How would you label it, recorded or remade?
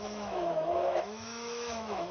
remade